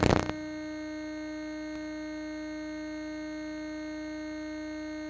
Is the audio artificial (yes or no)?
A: no